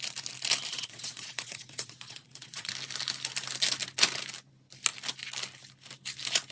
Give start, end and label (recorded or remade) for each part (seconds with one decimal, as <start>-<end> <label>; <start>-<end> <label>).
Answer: 0.0-0.7 recorded; 0.7-2.7 remade; 2.7-6.5 recorded